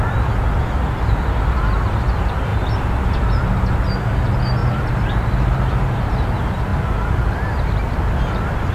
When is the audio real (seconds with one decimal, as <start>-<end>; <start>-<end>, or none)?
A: 0.0-4.6; 5.3-8.7